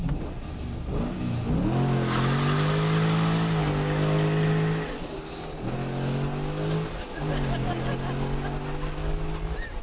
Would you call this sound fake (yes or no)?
no